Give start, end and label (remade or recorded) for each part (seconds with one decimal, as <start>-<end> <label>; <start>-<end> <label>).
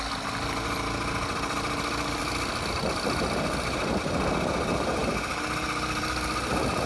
0.0-6.9 recorded